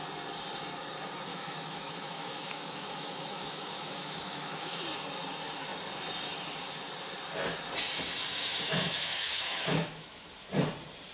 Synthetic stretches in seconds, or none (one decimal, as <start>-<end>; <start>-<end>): 1.3-4.8; 8.3-10.3